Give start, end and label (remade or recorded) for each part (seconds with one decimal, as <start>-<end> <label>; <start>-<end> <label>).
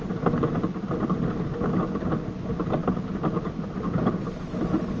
0.0-5.0 recorded